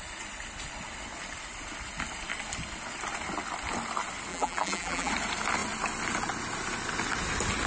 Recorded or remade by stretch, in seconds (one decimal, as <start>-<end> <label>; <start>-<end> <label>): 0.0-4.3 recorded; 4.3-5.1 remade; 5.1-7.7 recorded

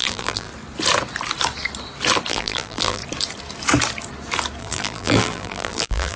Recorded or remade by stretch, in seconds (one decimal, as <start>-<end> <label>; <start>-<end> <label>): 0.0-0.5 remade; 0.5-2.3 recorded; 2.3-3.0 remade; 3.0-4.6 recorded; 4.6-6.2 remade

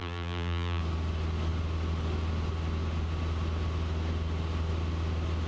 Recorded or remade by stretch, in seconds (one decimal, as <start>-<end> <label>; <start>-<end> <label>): 0.0-0.8 remade; 0.8-5.5 recorded

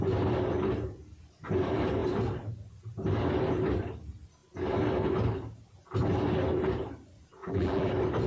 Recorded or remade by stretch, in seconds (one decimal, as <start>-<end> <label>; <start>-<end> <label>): 0.0-7.4 recorded; 7.4-7.9 remade; 7.9-8.3 recorded

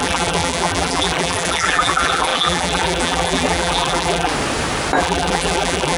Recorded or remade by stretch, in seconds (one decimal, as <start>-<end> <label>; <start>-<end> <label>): 0.0-4.3 remade; 4.3-5.0 recorded; 5.0-6.0 remade

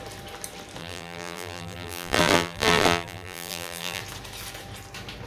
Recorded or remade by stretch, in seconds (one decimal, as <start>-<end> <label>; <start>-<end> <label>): 0.0-0.8 recorded; 0.8-4.0 remade; 4.0-5.3 recorded